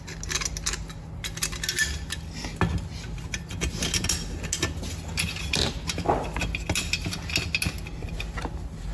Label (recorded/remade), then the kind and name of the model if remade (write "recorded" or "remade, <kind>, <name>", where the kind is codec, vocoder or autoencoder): recorded